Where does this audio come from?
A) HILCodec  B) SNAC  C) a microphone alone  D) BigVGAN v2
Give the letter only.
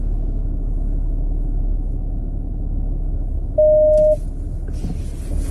C